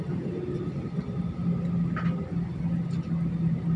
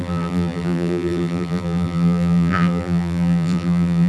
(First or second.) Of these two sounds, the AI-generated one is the second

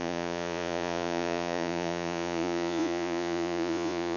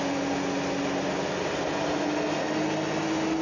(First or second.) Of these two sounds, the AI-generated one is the first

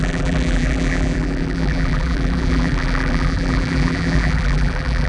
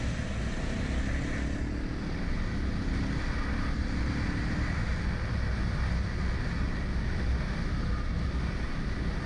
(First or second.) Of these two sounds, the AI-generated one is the first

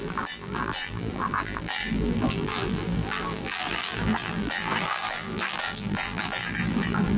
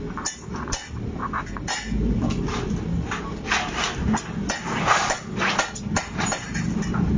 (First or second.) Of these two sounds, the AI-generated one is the first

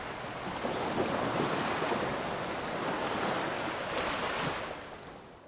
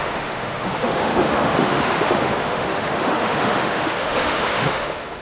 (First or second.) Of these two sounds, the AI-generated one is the second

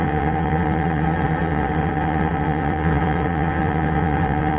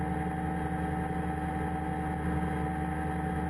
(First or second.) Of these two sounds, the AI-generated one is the first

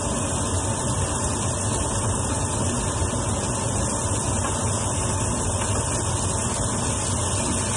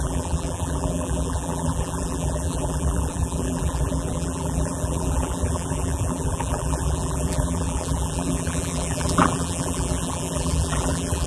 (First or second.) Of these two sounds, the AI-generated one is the second